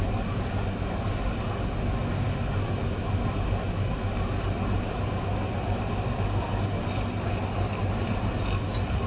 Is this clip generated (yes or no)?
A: no